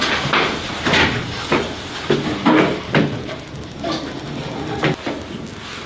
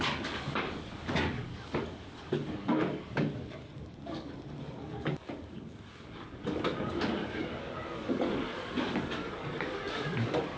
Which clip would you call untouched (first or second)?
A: first